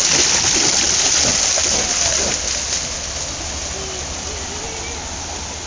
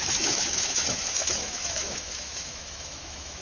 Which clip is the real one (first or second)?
first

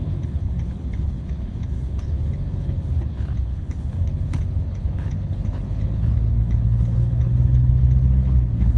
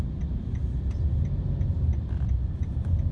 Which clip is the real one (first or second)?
second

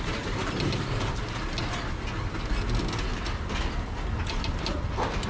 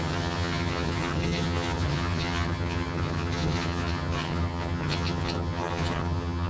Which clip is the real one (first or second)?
first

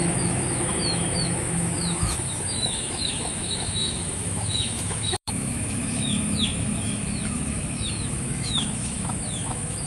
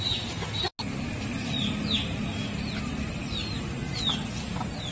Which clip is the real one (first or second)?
second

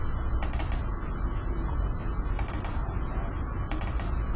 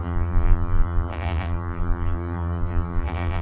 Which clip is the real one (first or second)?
first